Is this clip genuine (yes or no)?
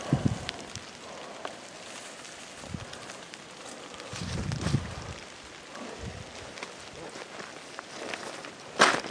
yes